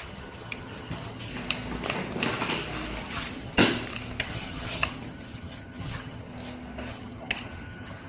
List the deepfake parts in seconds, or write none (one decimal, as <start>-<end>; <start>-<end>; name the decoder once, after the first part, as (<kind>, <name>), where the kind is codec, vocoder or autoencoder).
0.0-1.3 (vocoder, HiFi-GAN); 3.0-3.6; 4.2-6.3; 6.9-8.1